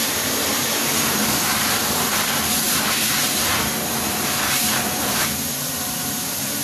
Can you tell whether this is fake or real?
fake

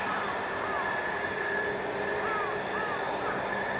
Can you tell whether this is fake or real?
real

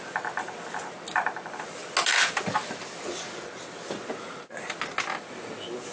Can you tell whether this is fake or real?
real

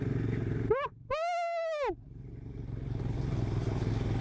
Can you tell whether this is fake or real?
real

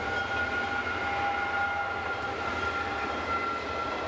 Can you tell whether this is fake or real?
real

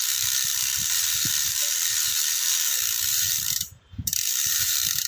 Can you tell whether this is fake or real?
fake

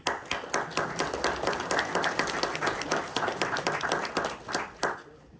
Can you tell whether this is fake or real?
real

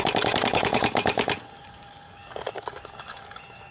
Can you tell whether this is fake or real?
fake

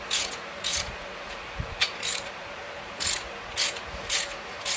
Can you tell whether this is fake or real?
fake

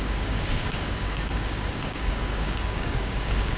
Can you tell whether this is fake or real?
fake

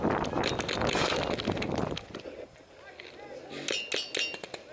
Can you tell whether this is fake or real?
real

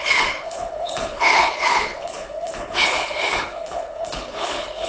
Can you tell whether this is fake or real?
fake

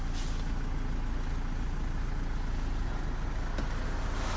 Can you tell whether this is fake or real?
real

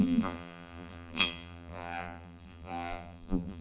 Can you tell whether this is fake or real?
fake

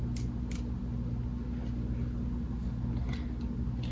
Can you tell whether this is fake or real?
real